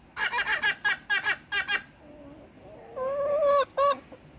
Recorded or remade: recorded